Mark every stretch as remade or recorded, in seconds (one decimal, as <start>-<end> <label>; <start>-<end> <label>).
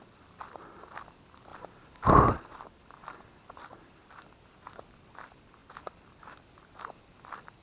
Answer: 0.0-1.5 recorded; 1.5-2.1 remade; 2.1-5.6 recorded; 5.6-6.4 remade; 6.4-7.6 recorded